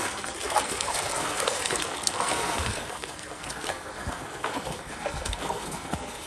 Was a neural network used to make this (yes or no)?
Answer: yes